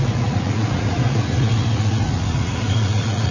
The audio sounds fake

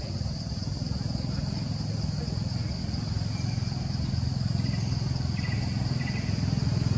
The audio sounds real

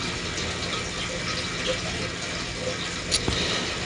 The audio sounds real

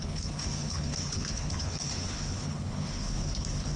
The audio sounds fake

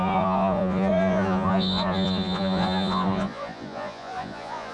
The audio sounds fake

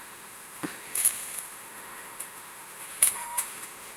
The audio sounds fake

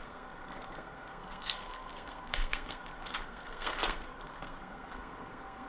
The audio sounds fake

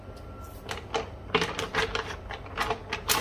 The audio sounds real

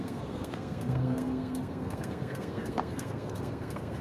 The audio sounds fake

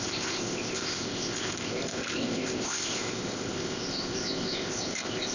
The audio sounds fake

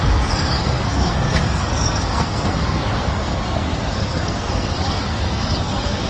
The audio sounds fake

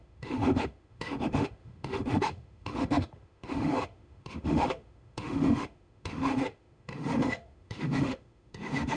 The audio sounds fake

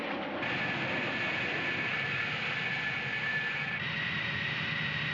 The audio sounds real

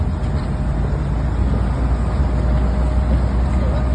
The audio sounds real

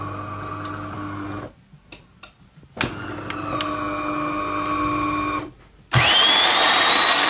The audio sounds real